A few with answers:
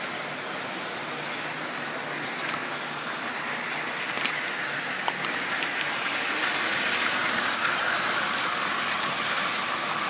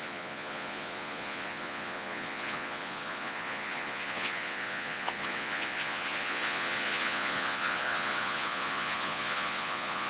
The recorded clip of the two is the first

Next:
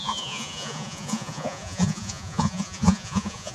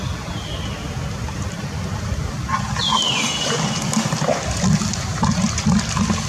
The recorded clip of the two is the second